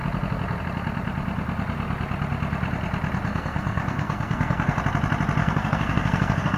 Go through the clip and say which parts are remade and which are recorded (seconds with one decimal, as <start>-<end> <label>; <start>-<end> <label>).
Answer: 0.0-3.3 recorded; 3.3-4.8 remade; 4.8-5.4 recorded; 5.4-6.6 remade

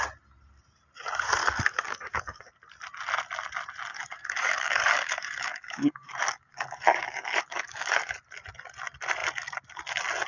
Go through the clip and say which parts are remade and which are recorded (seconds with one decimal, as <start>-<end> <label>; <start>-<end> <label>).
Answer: 0.0-1.4 recorded; 1.4-2.5 remade; 2.5-3.9 recorded; 3.9-8.1 remade; 8.1-10.3 recorded